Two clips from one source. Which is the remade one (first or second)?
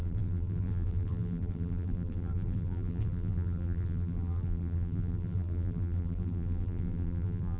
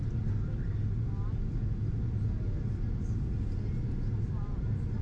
first